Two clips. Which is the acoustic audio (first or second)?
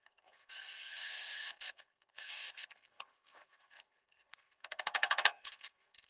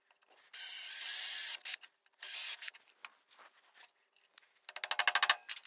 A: second